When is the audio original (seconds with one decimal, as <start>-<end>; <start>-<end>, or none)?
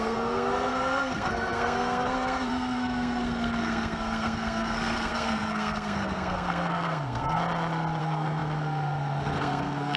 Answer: 7.4-8.0